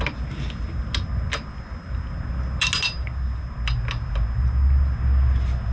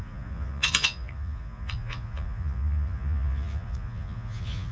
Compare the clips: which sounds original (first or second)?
first